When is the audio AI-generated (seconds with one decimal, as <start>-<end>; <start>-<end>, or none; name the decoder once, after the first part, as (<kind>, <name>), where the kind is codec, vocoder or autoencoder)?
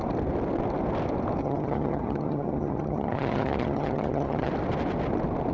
1.4-4.5 (vocoder, HiFi-GAN)